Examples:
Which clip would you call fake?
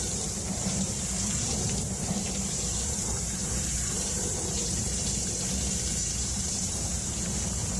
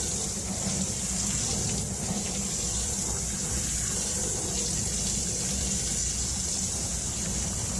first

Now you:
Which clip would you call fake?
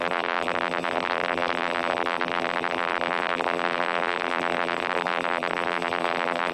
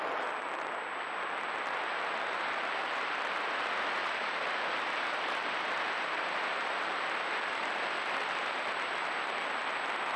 first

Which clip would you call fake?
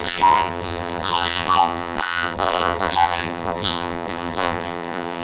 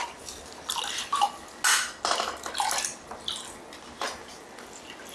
first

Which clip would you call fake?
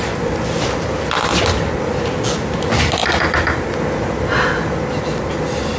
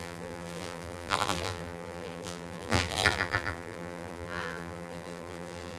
second